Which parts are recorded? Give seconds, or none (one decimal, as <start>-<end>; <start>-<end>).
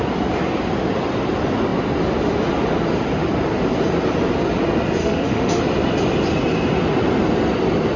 0.0-5.0; 5.6-8.0